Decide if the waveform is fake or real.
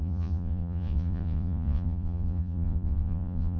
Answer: fake